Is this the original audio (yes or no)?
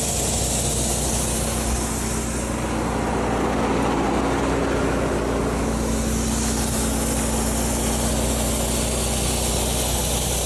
yes